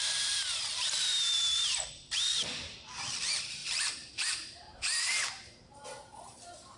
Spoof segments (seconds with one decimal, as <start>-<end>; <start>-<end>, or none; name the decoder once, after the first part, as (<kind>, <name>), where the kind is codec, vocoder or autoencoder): 0.0-1.1 (vocoder, BigVGAN v2); 1.9-6.8